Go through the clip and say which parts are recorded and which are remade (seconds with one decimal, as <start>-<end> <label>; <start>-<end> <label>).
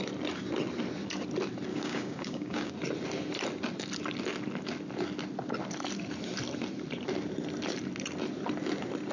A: 0.0-1.7 recorded; 1.7-2.7 remade; 2.7-9.1 recorded